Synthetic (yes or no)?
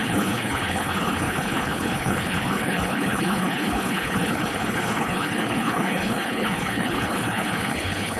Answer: yes